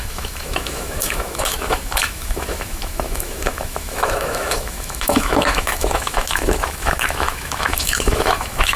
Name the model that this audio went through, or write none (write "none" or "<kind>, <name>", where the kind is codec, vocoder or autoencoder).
autoencoder, DAC-VAE